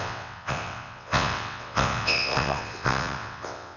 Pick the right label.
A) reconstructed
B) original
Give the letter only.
A